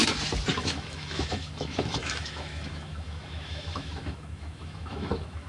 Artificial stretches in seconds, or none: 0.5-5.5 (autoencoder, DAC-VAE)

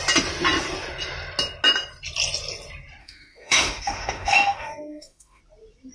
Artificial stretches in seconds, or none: 3.0-5.4 (autoencoder, DAC-VAE)

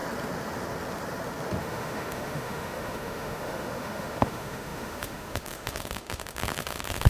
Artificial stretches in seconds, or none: 1.6-7.1 (autoencoder, DAC-VAE)

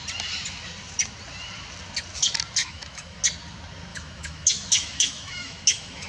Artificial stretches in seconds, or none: 2.6-3.2 (autoencoder, DAC-VAE); 3.9-6.1

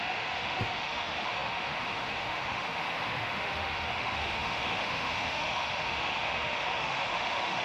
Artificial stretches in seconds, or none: 0.0-7.6 (autoencoder, DAC-VAE)

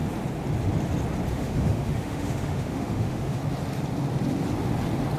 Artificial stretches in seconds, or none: 1.3-3.4 (autoencoder, DAC-VAE)